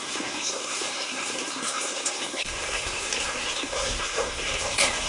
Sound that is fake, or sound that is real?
fake